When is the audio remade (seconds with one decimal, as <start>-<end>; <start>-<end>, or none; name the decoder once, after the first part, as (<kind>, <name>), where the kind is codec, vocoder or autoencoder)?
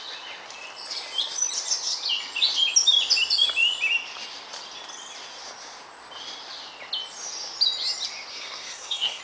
8.3-9.2 (codec, SNAC)